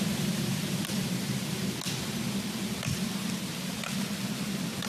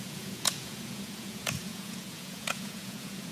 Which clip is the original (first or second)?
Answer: first